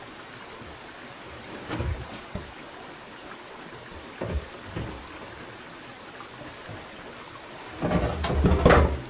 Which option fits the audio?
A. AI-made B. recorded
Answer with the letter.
B